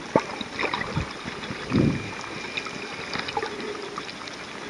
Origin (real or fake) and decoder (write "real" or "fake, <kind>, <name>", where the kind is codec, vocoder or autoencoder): real